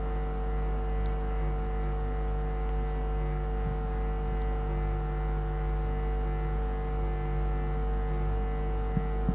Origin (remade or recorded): recorded